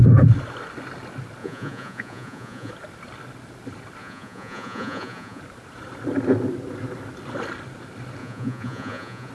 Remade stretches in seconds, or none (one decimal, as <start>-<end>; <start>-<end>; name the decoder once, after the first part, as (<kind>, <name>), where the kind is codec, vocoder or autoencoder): 1.4-2.7 (vocoder, Vocos); 4.0-5.4; 8.2-9.3